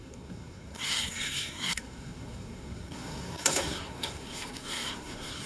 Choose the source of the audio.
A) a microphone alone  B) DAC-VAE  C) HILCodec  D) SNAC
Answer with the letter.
D